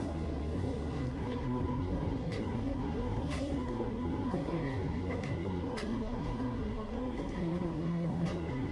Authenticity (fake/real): fake